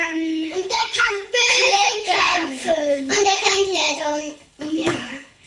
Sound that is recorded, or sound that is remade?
remade